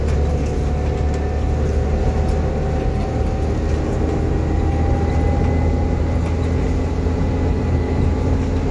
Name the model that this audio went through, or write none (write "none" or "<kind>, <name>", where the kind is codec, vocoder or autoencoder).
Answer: none